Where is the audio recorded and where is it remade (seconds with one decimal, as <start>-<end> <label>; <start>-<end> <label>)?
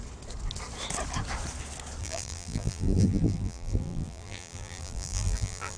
0.0-2.0 recorded; 2.0-5.8 remade